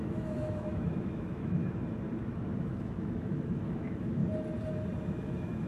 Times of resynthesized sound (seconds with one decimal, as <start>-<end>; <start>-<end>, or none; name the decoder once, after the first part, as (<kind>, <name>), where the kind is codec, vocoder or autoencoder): 0.0-1.6 (autoencoder, DAC-VAE); 2.6-4.2; 5.1-5.7